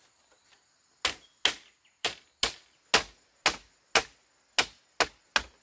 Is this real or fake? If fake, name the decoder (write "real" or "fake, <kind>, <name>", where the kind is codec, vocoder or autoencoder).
real